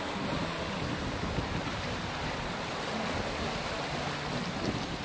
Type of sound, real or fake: real